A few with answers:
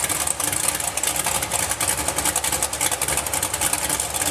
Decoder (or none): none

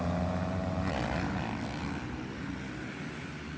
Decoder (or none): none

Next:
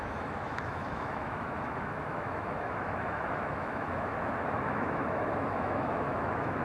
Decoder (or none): autoencoder, DAC-VAE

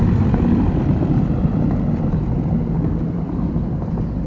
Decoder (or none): none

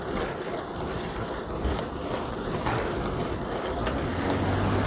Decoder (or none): none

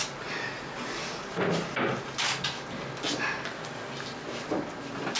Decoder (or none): none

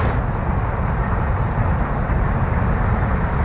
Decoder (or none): none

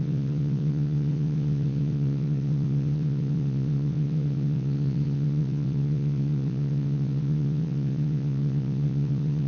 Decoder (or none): vocoder, WaveNeXt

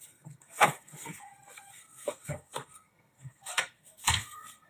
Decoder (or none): codec, SNAC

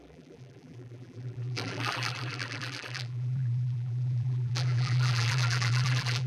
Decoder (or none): vocoder, BigVGAN v2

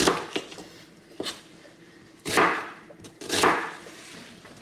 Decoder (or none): vocoder, BigVGAN v2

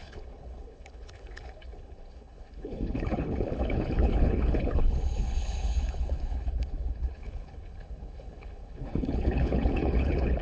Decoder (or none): codec, HILCodec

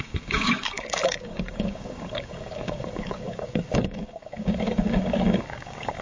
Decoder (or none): codec, DAC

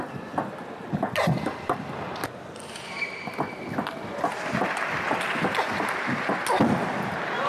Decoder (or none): none